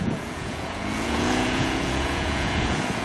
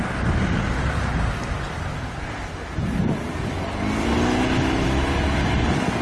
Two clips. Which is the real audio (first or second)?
second